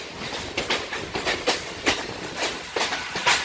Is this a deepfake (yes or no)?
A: no